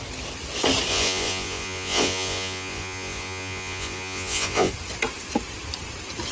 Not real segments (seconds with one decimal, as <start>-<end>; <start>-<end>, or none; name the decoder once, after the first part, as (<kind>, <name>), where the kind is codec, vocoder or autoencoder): 0.9-4.7 (vocoder, Vocos)